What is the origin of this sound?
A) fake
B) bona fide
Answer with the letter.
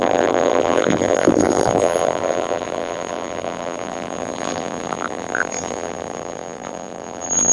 A